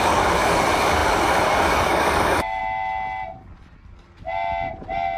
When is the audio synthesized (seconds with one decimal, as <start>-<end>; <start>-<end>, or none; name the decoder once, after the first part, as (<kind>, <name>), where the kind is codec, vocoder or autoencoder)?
0.0-2.6 (codec, DAC)